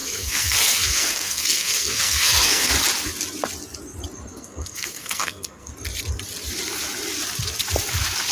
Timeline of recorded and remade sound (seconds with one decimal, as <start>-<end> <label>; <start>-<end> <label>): 0.0-2.7 remade; 2.7-4.3 recorded; 4.3-5.7 remade; 5.7-8.3 recorded

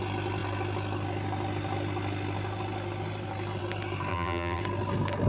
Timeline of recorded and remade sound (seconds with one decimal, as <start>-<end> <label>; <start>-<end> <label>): 0.0-4.1 recorded; 4.1-4.6 remade; 4.6-5.3 recorded

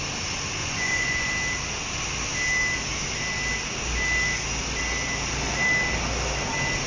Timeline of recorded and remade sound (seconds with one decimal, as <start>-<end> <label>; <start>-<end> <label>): 0.0-0.6 recorded; 0.6-1.3 remade; 1.3-6.9 recorded